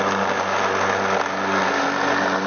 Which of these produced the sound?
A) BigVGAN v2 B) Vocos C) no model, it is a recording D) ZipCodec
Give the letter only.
C